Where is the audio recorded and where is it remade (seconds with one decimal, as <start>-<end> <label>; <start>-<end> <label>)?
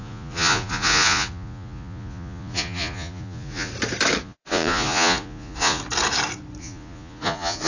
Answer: 0.0-3.7 remade; 3.7-4.2 recorded; 4.2-5.8 remade; 5.8-6.6 recorded; 6.6-7.7 remade